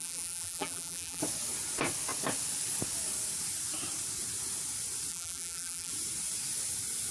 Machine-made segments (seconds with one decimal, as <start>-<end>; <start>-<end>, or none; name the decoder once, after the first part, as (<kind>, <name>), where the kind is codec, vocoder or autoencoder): 0.0-1.2 (vocoder, BigVGAN v2); 5.1-5.9